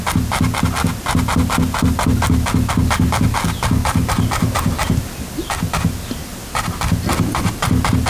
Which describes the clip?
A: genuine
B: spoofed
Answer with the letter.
A